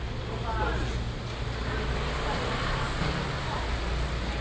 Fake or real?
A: real